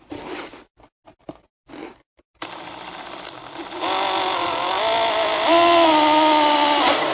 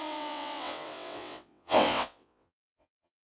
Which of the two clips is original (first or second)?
first